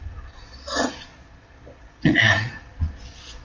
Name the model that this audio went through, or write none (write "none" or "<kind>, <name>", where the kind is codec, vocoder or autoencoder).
vocoder, Vocos